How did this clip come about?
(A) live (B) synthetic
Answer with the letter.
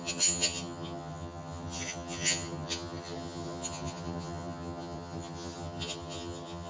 B